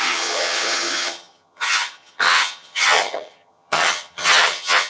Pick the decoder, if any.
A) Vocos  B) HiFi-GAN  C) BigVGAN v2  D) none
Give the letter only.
B